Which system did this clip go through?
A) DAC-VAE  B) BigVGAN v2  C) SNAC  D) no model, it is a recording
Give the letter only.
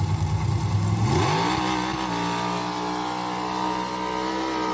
D